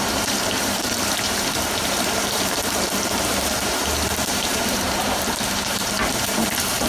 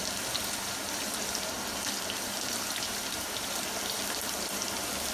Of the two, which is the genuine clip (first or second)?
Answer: second